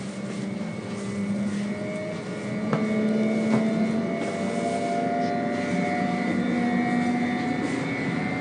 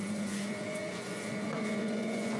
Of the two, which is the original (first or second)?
first